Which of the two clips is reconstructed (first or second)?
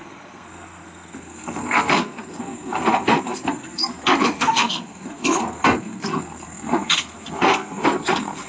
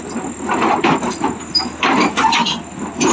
first